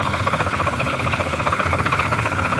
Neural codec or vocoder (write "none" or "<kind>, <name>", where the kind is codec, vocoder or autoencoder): codec, HILCodec